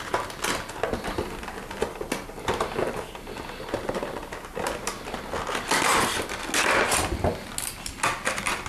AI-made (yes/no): no